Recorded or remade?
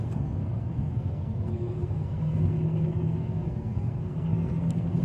remade